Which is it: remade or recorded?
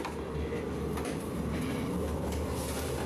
recorded